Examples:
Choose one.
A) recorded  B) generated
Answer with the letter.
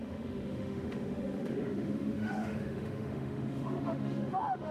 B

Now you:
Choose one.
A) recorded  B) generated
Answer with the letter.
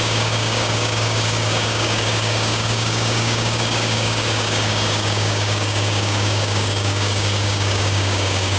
B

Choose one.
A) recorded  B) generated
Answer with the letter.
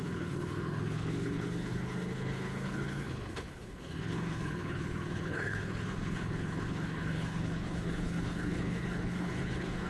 B